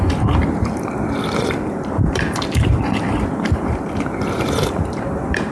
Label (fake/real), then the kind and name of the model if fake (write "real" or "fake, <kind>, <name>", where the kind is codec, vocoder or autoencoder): fake, vocoder, BigVGAN v2